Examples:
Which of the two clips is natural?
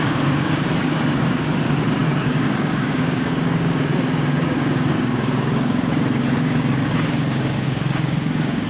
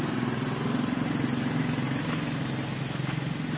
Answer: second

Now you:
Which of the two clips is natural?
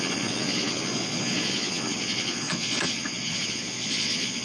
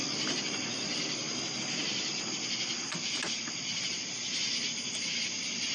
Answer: second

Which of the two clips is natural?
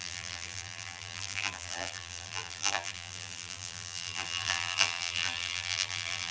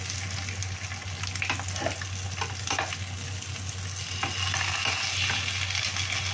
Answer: second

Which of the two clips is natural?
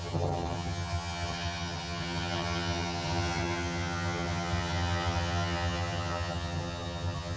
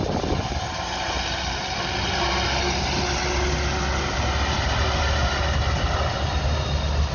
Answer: second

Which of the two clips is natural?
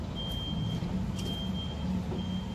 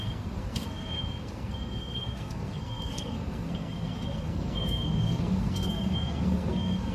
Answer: first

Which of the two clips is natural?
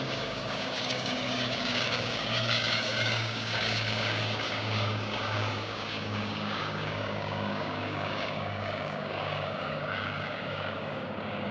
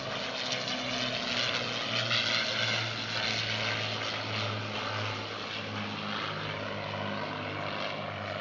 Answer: second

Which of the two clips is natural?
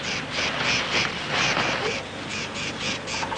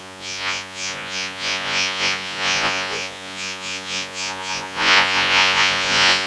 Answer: first